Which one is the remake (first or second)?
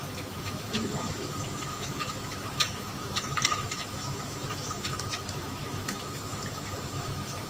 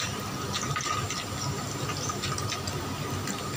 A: first